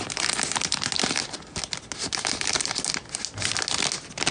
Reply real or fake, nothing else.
real